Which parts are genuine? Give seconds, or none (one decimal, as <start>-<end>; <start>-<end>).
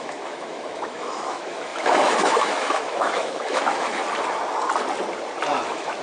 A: 4.0-5.5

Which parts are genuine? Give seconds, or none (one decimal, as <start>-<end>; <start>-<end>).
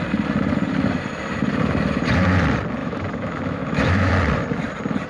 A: 0.0-2.8; 4.1-5.1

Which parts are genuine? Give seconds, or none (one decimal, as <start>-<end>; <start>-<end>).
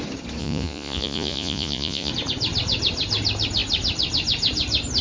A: 0.0-0.4; 2.1-5.0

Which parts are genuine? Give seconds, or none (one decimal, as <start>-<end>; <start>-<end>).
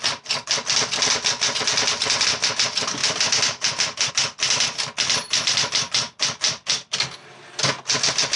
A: 0.0-8.4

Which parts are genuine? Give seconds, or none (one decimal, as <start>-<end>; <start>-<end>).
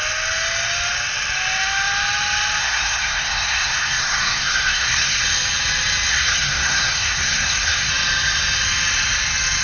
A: 0.0-2.6; 5.2-6.1; 7.9-9.6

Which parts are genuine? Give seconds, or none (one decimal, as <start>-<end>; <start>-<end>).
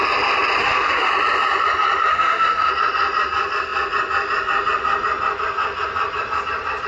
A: 0.0-0.6; 1.1-2.1; 2.7-6.9